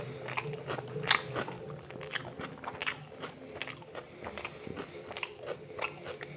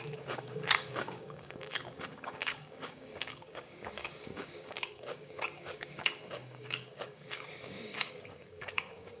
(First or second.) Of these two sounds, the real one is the first